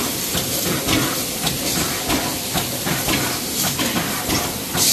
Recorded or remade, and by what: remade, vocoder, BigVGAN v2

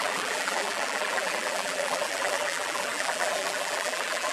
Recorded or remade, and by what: remade, vocoder, BigVGAN v2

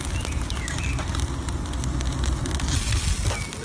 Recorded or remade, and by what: recorded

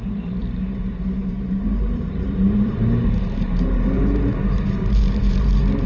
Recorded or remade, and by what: remade, vocoder, BigVGAN v2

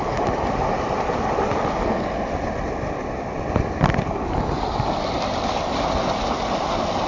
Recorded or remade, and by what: recorded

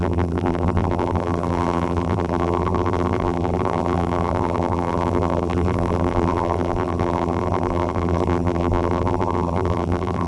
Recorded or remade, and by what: remade, vocoder, BigVGAN v2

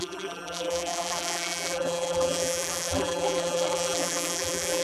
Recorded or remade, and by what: remade, vocoder, BigVGAN v2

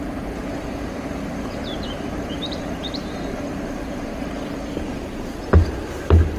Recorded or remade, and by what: remade, vocoder, BigVGAN v2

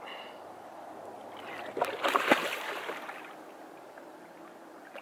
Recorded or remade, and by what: recorded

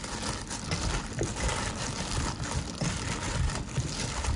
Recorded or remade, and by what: remade, vocoder, BigVGAN v2